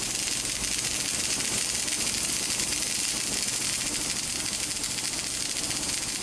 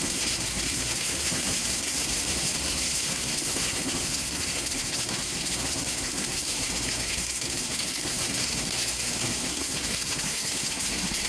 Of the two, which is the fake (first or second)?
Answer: second